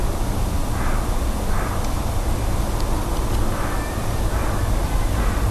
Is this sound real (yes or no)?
yes